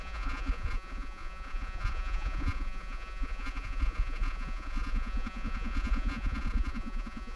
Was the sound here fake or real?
fake